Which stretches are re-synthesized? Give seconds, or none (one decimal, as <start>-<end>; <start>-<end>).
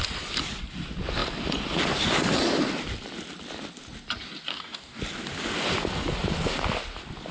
4.5-5.0